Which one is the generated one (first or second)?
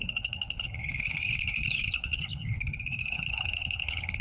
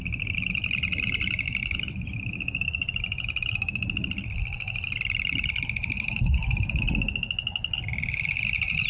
first